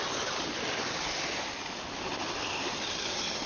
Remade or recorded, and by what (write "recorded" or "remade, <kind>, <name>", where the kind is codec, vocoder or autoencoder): recorded